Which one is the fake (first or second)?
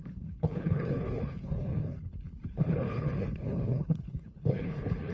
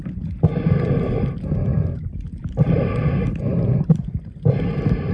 first